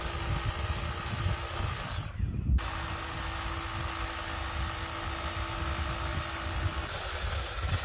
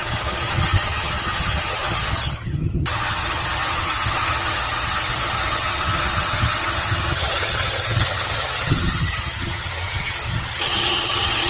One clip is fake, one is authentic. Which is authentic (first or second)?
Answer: first